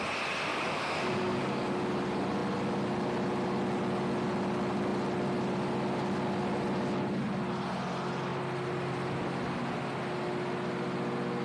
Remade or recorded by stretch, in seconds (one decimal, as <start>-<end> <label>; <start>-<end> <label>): 0.0-0.5 recorded; 0.5-1.9 remade; 1.9-11.4 recorded